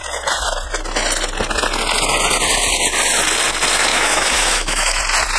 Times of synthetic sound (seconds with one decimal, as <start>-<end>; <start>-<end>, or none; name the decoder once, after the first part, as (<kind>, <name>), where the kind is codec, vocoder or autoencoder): 3.9-5.0 (autoencoder, DAC-VAE)